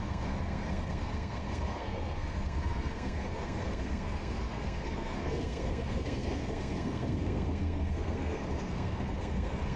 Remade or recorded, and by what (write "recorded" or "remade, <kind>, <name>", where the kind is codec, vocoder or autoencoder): remade, codec, SNAC